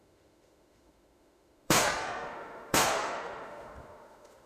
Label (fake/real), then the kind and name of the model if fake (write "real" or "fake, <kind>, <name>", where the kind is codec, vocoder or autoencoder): fake, autoencoder, DAC-VAE